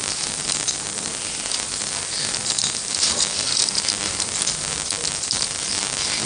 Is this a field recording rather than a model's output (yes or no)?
no